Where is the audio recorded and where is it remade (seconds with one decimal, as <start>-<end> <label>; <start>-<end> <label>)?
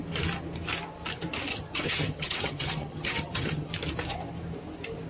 0.0-1.5 recorded; 1.5-3.7 remade; 3.7-5.1 recorded